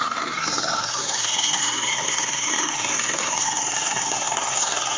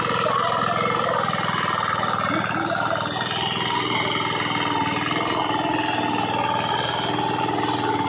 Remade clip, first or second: first